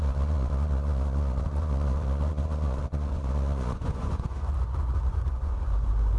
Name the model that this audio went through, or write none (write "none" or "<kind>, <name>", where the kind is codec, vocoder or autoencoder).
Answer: vocoder, Vocos